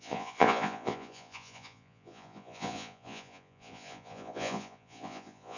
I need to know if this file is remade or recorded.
remade